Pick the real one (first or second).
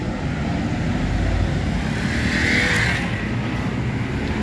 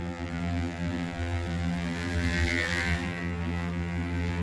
first